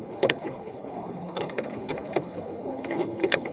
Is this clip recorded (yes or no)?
no